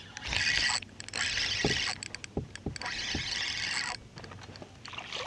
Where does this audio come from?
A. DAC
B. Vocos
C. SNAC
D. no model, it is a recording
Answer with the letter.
D